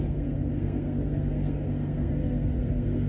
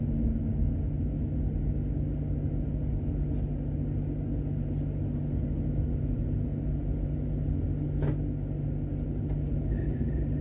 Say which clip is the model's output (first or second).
first